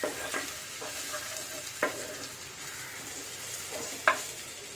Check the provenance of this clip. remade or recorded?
recorded